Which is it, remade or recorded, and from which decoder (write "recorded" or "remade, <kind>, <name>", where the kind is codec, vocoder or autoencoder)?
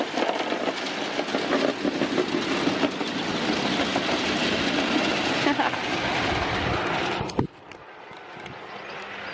recorded